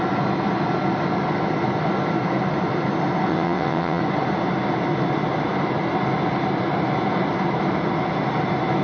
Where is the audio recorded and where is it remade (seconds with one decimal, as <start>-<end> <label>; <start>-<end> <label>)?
0.0-3.3 recorded; 3.3-4.0 remade; 4.0-8.8 recorded